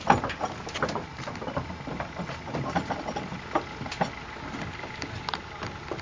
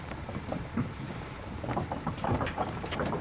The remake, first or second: second